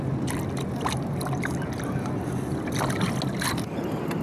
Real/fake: real